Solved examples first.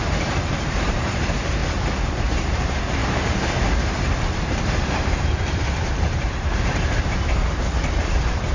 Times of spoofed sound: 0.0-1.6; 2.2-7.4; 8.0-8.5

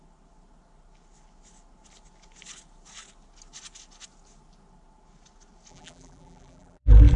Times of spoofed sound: 5.7-7.2

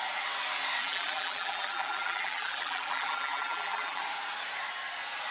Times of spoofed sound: 0.8-4.0

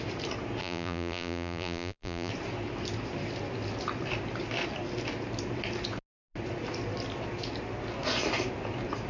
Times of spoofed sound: 0.6-2.3

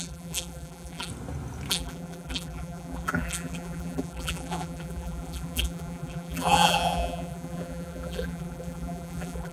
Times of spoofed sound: 0.0-1.1; 1.7-9.5

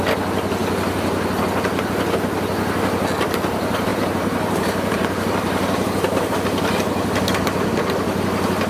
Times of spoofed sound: 3.9-6.3

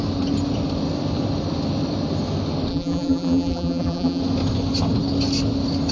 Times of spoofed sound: 2.7-4.2

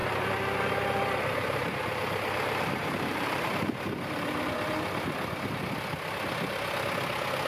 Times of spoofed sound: 0.0-4.5